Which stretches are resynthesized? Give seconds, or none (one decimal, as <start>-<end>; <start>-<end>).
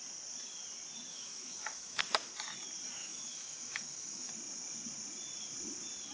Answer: 1.1-2.0; 3.0-4.3